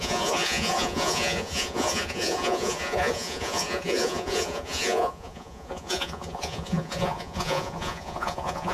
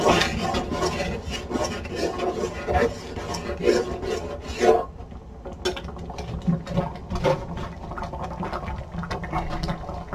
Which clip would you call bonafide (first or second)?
second